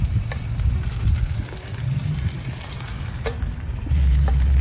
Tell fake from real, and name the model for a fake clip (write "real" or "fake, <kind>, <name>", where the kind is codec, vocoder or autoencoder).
fake, vocoder, BigVGAN v2